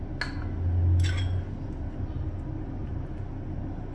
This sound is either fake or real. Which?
real